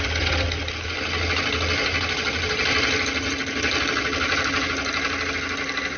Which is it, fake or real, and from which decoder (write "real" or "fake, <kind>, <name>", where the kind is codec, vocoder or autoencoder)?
real